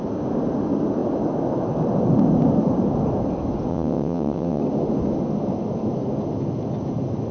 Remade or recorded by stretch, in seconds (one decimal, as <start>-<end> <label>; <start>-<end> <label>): 0.0-3.7 recorded; 3.7-4.6 remade; 4.6-7.3 recorded